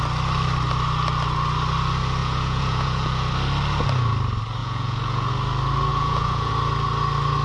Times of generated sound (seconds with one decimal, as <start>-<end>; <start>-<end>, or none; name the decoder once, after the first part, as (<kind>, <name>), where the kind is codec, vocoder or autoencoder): 2.2-3.3 (vocoder, Vocos); 4.6-5.3; 5.9-6.5